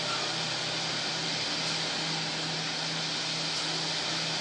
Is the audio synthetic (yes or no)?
no